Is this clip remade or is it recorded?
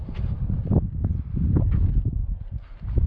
recorded